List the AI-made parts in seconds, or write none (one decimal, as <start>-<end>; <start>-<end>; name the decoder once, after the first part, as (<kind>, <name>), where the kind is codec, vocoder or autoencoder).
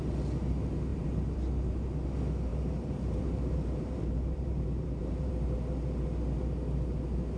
2.5-5.3 (vocoder, BigVGAN v2)